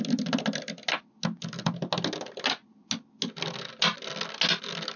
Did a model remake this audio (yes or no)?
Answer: no